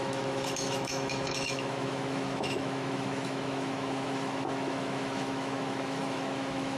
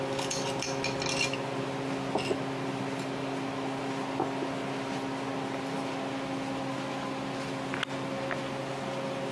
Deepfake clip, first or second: first